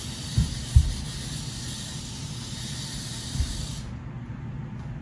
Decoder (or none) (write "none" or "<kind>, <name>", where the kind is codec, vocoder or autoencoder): none